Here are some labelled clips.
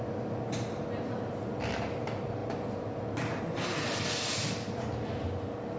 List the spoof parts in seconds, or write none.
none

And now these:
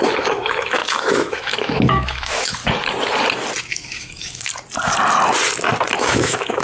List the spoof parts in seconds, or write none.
0.0-2.6 (autoencoder, DAC-VAE); 3.6-4.5; 6.0-6.6

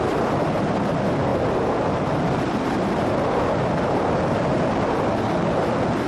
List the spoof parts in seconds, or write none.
none